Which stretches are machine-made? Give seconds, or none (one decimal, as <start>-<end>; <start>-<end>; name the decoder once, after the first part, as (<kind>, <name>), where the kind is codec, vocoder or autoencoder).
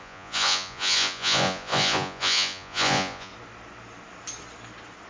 0.0-3.3 (vocoder, Vocos)